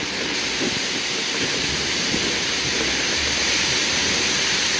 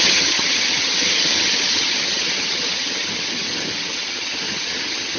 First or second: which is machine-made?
second